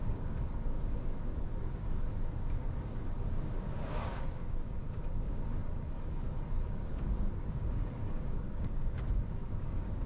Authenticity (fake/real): fake